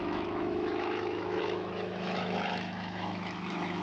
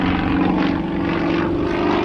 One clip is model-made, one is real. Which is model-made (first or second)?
first